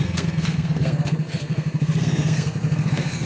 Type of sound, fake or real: fake